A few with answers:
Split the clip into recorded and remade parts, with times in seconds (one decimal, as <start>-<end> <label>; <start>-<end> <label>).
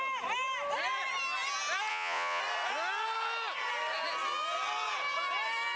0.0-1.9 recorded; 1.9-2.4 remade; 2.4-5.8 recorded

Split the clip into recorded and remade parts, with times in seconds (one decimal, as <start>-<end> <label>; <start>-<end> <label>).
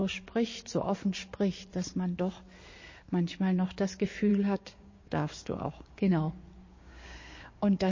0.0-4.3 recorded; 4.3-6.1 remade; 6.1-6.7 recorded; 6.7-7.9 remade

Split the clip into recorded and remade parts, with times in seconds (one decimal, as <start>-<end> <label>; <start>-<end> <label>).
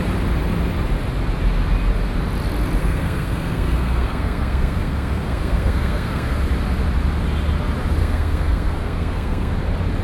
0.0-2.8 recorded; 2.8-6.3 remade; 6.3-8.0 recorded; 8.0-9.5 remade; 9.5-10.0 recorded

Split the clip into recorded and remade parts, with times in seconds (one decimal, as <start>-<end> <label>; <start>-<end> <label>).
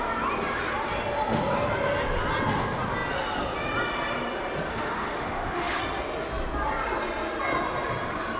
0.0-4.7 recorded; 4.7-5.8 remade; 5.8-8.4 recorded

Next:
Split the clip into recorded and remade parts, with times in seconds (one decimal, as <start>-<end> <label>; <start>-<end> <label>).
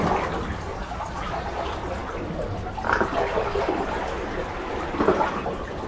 0.0-0.7 recorded; 0.7-1.6 remade; 1.6-5.9 recorded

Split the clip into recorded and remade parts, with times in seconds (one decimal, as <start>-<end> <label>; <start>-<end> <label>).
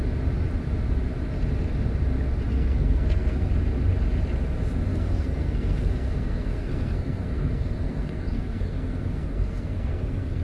0.0-2.5 recorded; 2.5-3.5 remade; 3.5-4.9 recorded; 4.9-10.4 remade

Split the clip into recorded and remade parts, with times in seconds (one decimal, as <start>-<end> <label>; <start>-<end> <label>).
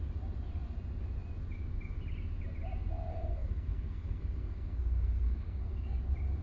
0.0-3.1 recorded; 3.1-6.0 remade; 6.0-6.4 recorded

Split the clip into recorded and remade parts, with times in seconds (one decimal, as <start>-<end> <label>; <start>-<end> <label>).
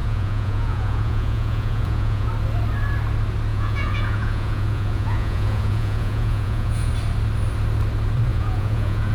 0.0-2.3 remade; 2.3-3.5 recorded; 3.5-6.9 remade; 6.9-8.3 recorded; 8.3-9.1 remade